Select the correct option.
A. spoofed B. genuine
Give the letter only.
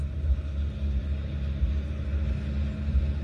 B